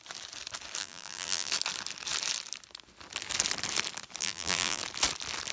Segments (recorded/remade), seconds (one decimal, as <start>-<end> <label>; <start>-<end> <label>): 0.0-0.8 recorded; 0.8-1.5 remade; 1.5-4.2 recorded; 4.2-4.8 remade; 4.8-5.5 recorded

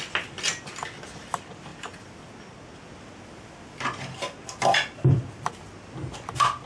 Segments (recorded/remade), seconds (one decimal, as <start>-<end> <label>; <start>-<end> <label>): 0.0-6.7 recorded

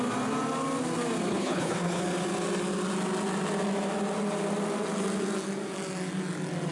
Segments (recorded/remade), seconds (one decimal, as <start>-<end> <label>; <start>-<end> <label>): 0.0-1.3 recorded; 1.3-2.0 remade; 2.0-6.7 recorded

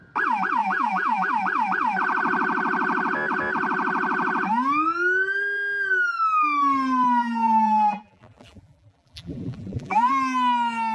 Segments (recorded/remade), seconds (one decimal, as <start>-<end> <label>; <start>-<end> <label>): 0.0-0.6 recorded; 0.6-1.3 remade; 1.3-7.2 recorded; 7.2-10.1 remade; 10.1-10.9 recorded

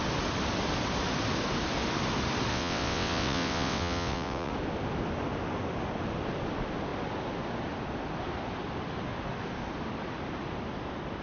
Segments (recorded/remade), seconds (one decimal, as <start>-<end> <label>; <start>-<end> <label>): 0.0-2.5 recorded; 2.5-4.5 remade; 4.5-11.2 recorded